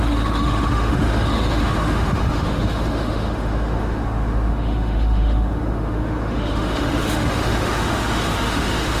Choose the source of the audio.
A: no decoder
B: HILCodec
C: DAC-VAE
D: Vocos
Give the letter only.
C